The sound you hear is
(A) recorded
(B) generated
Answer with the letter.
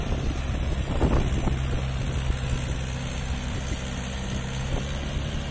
A